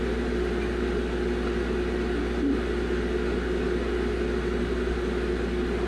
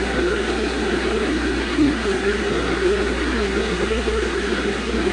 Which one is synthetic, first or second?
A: second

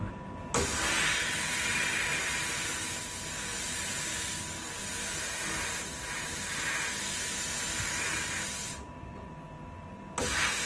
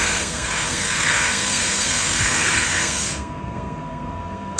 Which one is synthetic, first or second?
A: second